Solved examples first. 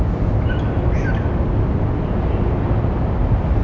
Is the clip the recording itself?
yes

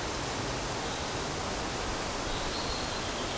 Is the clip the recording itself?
yes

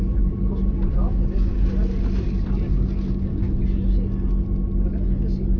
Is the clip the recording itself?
yes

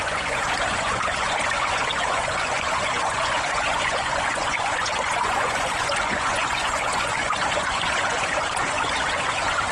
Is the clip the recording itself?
no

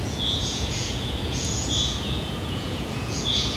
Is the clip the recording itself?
no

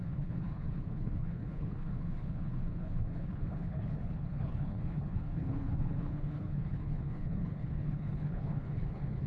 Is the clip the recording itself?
no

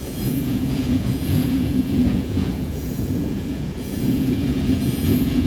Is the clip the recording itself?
no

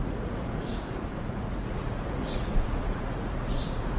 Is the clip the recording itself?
no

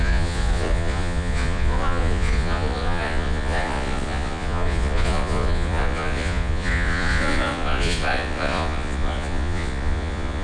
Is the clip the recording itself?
no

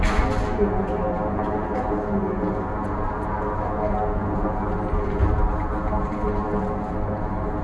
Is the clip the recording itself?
yes